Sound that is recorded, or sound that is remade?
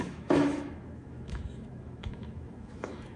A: remade